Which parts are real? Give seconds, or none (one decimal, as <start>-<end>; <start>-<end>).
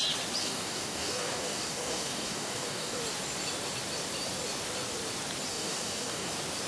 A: 0.0-0.4; 3.0-5.5; 6.3-6.7